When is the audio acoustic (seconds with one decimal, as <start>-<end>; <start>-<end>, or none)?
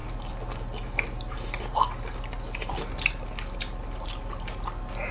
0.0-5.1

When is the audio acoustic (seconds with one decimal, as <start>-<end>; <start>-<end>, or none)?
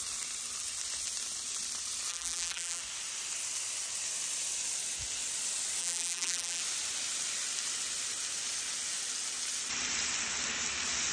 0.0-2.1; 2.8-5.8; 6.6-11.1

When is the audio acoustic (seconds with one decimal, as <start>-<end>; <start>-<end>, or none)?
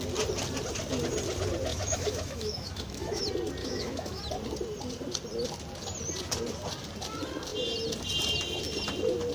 0.0-1.7; 3.2-3.6; 4.2-9.3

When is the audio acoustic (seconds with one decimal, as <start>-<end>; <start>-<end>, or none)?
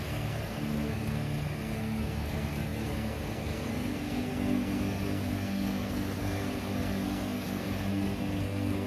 none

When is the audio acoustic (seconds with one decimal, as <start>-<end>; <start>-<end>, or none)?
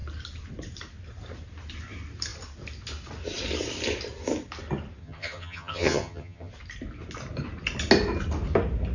0.0-5.0; 6.5-8.9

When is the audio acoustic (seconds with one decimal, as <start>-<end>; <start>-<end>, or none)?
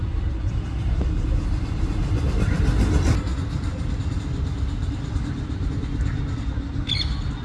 0.0-7.4